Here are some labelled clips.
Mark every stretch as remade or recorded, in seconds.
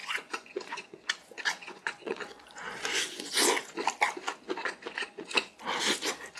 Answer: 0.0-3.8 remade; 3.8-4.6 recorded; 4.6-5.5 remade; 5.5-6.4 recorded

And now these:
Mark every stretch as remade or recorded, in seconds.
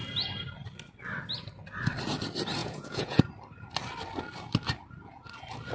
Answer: 0.0-2.6 recorded; 2.6-3.2 remade; 3.2-5.7 recorded